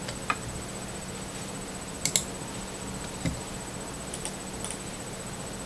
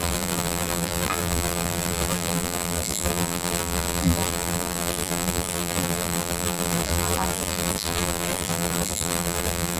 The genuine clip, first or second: first